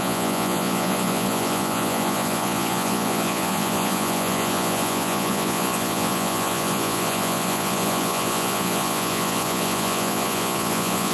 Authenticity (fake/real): fake